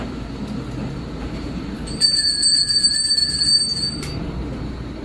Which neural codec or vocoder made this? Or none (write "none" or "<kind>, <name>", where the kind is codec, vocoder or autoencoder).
vocoder, BigVGAN v2